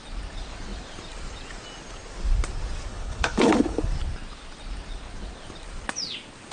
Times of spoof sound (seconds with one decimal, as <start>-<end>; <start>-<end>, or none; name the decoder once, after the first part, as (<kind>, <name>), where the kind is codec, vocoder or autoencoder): 2.9-3.9 (codec, HILCodec)